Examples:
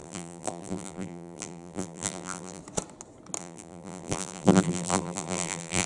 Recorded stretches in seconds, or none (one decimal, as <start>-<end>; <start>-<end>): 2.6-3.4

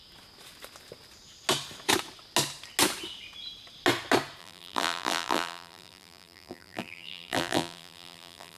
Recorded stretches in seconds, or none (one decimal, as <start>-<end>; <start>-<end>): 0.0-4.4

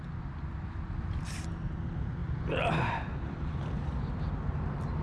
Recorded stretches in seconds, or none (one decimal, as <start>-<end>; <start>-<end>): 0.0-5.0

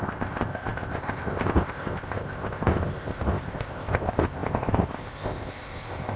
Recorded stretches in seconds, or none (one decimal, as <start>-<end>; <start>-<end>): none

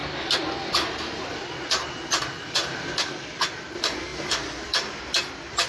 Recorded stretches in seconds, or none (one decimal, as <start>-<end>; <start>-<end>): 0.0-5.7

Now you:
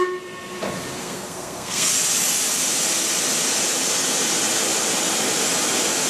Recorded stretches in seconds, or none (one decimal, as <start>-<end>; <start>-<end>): 0.0-1.0; 1.9-6.1